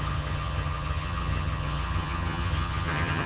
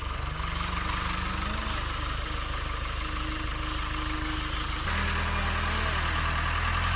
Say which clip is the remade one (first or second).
first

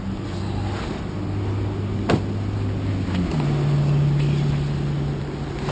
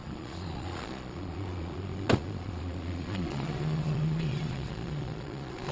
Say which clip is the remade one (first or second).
second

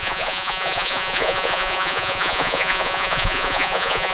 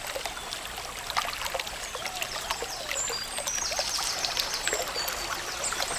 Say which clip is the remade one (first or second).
first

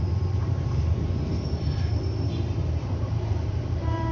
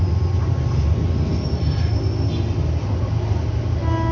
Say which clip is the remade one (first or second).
first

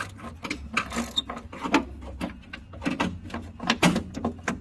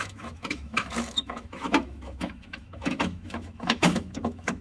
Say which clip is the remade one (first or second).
second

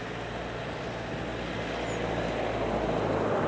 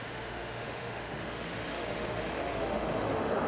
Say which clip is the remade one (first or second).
second